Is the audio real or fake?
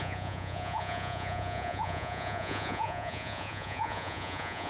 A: fake